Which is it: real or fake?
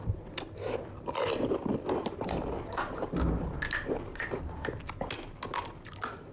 fake